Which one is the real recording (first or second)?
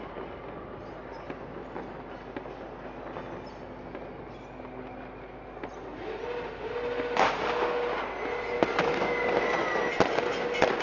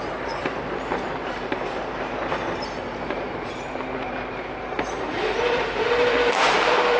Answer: first